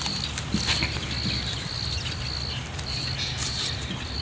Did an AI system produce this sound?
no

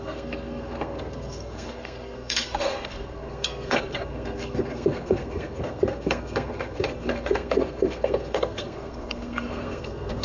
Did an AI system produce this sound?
yes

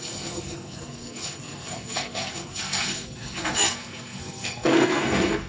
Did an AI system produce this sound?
yes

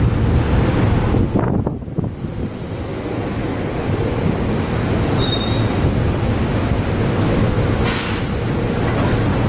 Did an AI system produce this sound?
no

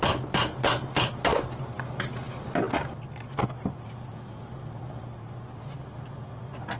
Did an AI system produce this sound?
no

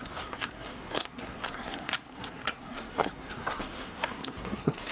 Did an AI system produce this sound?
yes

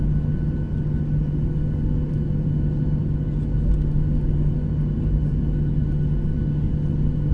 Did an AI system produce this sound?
no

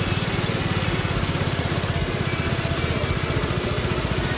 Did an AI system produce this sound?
no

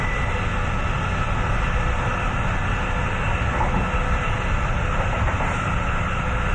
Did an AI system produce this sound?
no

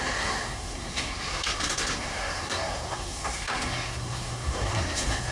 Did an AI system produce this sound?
yes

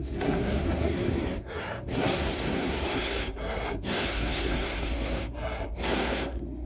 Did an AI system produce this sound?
yes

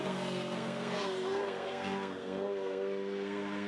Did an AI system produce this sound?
yes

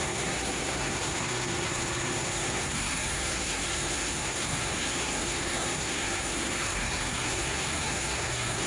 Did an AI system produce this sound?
yes